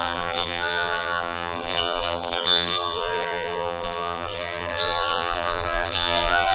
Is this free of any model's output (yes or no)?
no